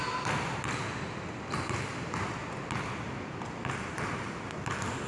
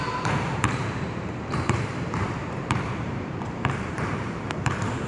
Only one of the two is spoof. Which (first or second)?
second